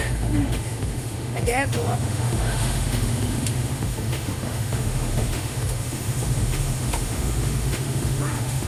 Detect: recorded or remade remade